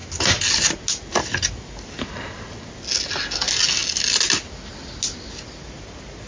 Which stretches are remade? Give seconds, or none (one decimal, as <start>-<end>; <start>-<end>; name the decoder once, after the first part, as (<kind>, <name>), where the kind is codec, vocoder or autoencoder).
none

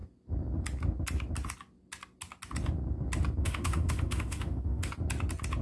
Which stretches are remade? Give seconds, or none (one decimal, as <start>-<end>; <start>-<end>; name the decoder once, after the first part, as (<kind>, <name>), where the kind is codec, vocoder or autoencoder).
3.4-4.9 (autoencoder, DAC-VAE)

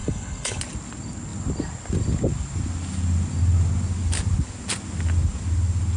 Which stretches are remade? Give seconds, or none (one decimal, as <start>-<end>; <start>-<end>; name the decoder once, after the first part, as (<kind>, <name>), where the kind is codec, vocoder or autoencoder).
0.0-0.6 (codec, HILCodec)

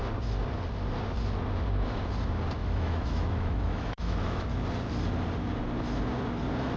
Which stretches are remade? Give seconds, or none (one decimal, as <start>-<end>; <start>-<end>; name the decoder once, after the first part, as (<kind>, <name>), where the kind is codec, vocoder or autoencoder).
2.6-4.5 (autoencoder, DAC-VAE)

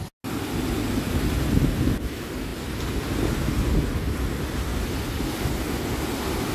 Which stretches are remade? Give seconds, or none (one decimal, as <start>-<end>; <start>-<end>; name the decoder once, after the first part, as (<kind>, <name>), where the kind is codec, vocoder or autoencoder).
none

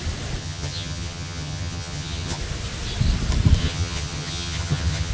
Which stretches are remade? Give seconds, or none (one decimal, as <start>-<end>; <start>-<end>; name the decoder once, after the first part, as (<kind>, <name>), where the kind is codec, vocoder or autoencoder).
0.4-2.4 (vocoder, HiFi-GAN); 3.6-5.1

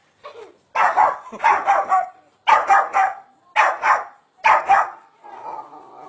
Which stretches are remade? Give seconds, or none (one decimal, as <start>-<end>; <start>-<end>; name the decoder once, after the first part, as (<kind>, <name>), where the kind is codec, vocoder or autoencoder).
none